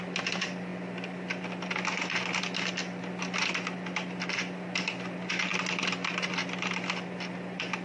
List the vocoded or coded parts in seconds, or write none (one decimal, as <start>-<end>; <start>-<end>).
none